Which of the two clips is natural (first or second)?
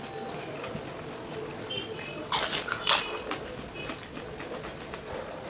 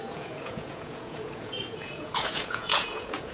first